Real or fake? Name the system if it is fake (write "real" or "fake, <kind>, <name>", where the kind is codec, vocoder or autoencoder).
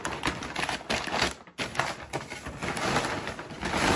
real